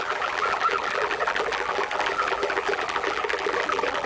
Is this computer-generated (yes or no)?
yes